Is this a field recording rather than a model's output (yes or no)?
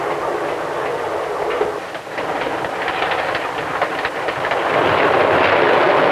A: yes